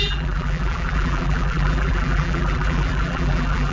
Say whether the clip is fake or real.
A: fake